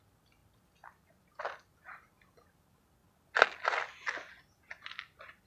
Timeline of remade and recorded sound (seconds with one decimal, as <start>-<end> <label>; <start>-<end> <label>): 0.0-5.5 recorded